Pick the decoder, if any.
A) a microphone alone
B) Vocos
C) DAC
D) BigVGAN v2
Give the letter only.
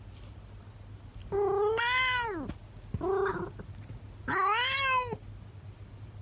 A